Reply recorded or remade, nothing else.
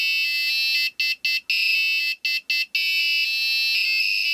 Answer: recorded